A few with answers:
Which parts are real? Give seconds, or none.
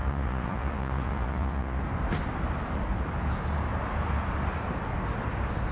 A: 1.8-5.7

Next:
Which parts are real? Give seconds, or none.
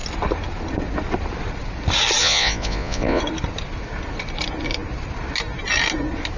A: 0.0-2.2; 3.2-6.4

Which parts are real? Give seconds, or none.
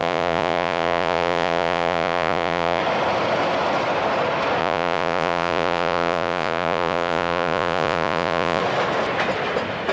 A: 2.8-4.6; 8.6-9.9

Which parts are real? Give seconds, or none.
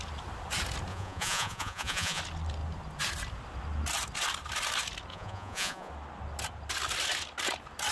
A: 0.0-0.9; 2.2-5.1; 5.9-7.9